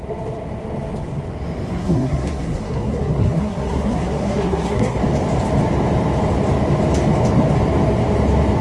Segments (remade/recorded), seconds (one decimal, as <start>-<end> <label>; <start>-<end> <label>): 0.0-1.8 recorded; 1.8-5.0 remade; 5.0-8.6 recorded